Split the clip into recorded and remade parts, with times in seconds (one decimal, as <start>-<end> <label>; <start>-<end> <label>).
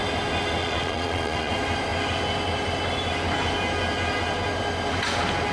0.0-0.6 recorded; 0.6-1.5 remade; 1.5-5.5 recorded